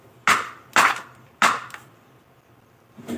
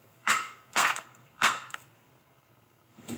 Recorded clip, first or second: first